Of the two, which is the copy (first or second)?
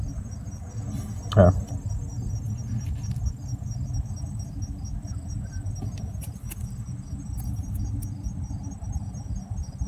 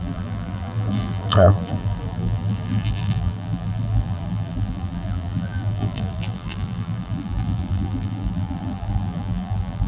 second